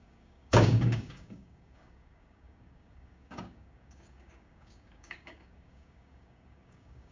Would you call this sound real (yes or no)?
no